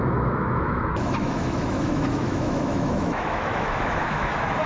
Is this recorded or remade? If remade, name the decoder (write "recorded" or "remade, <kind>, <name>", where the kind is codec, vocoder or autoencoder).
remade, autoencoder, DAC-VAE